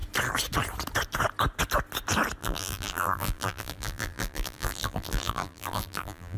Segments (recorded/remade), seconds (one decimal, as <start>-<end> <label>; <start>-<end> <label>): 0.0-2.4 recorded; 2.4-6.4 remade